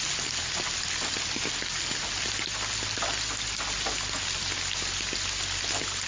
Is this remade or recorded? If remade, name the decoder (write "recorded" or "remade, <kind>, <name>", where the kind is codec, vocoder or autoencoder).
recorded